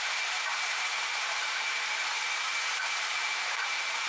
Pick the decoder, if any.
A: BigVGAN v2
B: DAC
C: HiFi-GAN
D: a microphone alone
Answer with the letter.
A